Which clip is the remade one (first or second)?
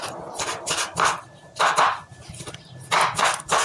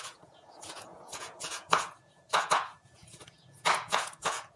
second